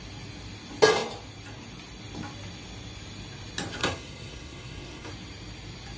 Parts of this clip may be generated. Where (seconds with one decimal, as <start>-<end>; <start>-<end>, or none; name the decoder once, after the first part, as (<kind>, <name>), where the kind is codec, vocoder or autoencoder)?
3.8-5.1 (codec, SNAC)